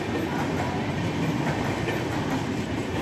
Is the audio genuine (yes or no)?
yes